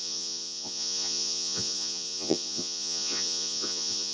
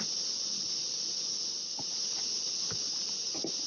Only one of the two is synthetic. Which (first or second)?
first